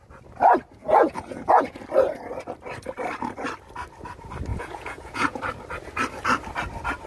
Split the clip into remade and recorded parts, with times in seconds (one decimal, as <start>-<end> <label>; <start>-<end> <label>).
0.0-0.8 recorded; 0.8-1.8 remade; 1.8-4.5 recorded; 4.5-5.4 remade; 5.4-7.1 recorded

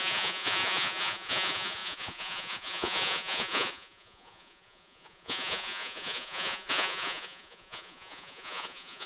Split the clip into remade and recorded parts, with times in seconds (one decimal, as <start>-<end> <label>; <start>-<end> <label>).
0.0-9.1 remade

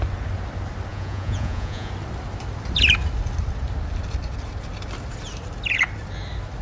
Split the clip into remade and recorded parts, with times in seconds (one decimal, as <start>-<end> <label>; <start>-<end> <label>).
0.0-0.9 recorded; 0.9-1.9 remade; 1.9-6.6 recorded

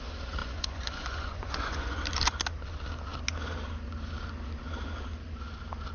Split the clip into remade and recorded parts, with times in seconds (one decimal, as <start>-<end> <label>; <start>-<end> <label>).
0.0-0.4 recorded; 0.4-2.0 remade; 2.0-5.9 recorded